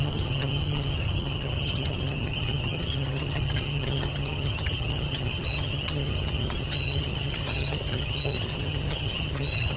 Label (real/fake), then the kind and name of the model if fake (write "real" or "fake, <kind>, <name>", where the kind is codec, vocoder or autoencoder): fake, vocoder, HiFi-GAN